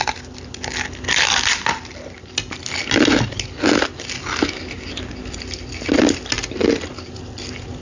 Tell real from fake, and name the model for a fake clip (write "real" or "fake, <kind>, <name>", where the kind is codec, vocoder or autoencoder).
real